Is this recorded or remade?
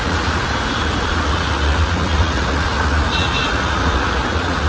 remade